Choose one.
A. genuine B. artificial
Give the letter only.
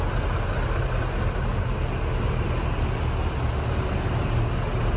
A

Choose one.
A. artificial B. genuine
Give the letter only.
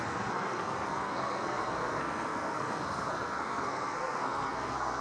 A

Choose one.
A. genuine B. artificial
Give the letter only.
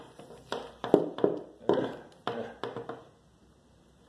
A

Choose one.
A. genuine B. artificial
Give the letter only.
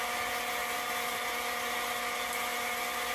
A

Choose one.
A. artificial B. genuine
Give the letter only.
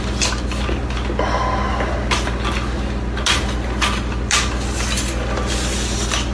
B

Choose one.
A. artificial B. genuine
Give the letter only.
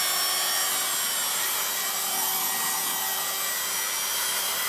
B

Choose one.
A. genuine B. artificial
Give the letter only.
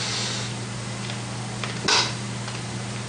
A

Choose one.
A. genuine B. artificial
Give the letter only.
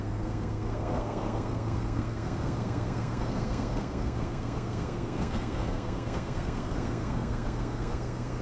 B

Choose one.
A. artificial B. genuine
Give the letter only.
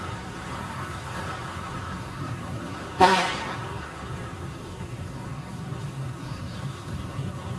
A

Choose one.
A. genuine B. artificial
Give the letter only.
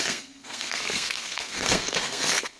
B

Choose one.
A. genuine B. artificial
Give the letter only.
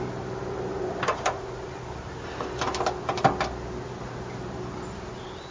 A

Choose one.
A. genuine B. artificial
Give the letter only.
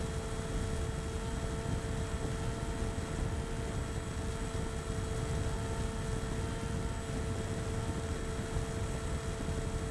A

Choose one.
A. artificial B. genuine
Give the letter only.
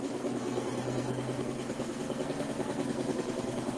A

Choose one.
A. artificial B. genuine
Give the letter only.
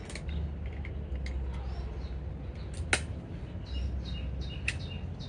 B